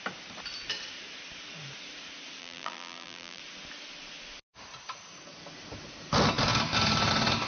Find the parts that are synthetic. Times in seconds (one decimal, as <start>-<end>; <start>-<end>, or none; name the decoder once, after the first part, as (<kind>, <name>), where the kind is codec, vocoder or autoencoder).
2.4-3.4 (vocoder, BigVGAN v2)